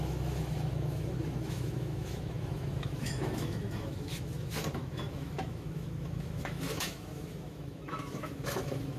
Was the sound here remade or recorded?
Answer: remade